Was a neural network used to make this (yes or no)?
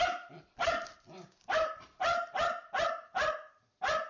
no